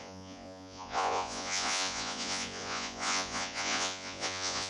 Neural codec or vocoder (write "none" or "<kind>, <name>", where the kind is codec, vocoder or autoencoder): vocoder, Vocos